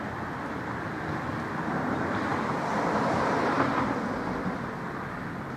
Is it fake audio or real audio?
real